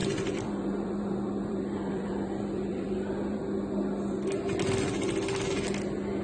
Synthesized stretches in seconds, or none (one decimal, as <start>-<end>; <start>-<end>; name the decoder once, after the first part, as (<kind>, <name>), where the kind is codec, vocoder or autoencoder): 0.0-3.7 (vocoder, BigVGAN v2)